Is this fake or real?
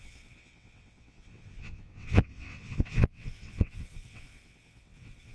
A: fake